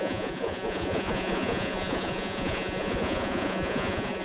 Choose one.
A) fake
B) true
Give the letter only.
A